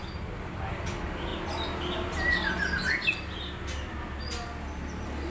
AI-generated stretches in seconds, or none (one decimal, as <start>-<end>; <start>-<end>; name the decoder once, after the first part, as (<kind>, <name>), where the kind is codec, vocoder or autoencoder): none